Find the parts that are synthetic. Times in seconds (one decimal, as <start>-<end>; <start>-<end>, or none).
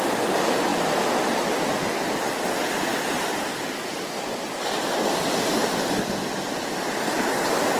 none